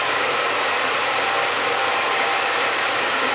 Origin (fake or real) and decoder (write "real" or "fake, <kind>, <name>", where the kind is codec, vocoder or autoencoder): fake, vocoder, BigVGAN v2